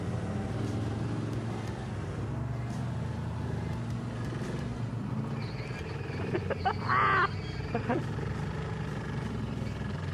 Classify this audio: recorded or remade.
recorded